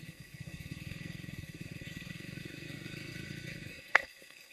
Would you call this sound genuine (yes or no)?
no